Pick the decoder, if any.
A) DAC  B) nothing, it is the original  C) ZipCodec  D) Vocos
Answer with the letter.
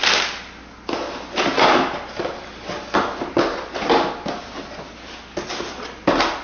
B